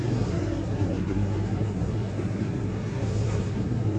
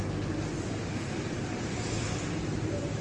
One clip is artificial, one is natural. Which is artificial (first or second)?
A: first